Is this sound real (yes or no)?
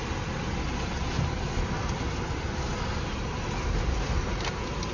yes